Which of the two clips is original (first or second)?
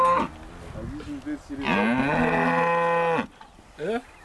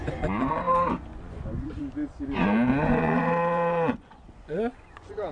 first